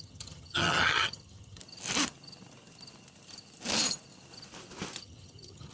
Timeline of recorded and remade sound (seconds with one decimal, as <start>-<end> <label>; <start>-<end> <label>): 0.0-1.6 remade; 1.6-5.0 recorded; 5.0-5.7 remade